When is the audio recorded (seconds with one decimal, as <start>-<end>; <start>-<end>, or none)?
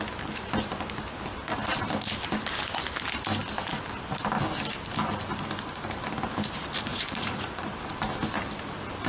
0.0-6.9; 7.7-9.1